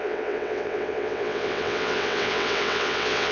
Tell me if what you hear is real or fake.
fake